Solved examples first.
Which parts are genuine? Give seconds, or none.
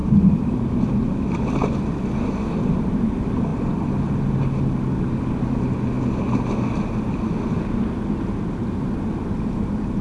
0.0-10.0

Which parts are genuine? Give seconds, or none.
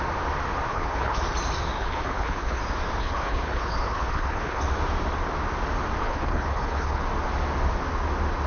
0.0-0.7; 1.2-1.8; 2.6-3.0; 4.6-6.0; 7.0-8.5